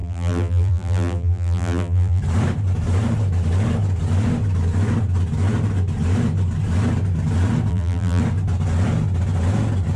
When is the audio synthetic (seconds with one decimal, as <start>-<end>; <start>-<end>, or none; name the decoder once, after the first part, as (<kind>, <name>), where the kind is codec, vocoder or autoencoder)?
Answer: 0.0-2.2 (vocoder, BigVGAN v2); 7.7-8.2